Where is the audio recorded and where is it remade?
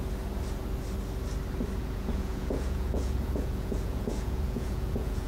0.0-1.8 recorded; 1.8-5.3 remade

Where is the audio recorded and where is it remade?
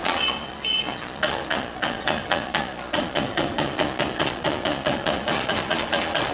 0.0-6.3 remade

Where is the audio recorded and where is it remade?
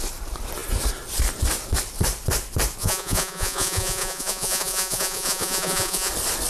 0.0-2.8 recorded; 2.8-6.1 remade; 6.1-6.5 recorded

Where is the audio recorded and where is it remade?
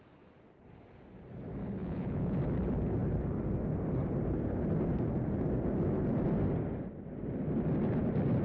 0.0-1.8 recorded; 1.8-2.4 remade; 2.4-8.4 recorded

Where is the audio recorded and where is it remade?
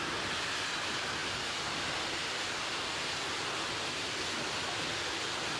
0.0-5.6 recorded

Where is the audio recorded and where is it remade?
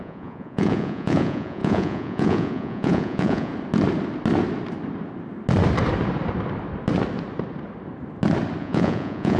0.0-3.5 remade; 3.5-8.6 recorded; 8.6-9.4 remade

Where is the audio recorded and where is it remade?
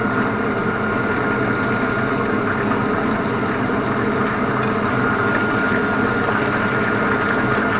0.0-7.8 recorded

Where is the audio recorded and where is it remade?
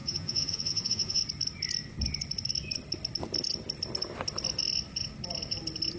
0.0-1.2 remade; 1.2-6.0 recorded